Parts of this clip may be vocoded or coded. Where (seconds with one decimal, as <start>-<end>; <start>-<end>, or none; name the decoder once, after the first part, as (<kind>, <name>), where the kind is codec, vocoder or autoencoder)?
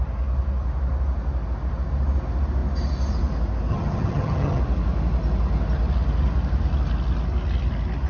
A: 3.7-4.6 (vocoder, HiFi-GAN)